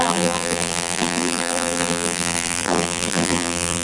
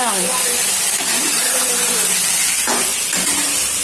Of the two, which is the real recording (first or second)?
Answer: second